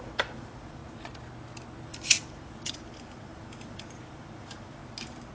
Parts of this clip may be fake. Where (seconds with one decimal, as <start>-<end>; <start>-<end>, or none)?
0.0-0.8; 1.9-4.8